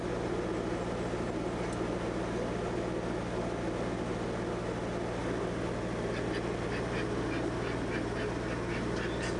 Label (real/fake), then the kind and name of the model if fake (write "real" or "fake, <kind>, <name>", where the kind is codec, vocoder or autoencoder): real